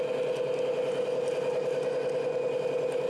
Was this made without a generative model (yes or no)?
yes